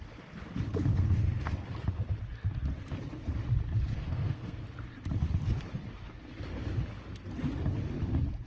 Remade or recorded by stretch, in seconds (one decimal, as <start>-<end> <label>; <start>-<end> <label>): 0.0-0.9 recorded; 0.9-1.5 remade; 1.5-3.9 recorded; 3.9-4.6 remade; 4.6-8.5 recorded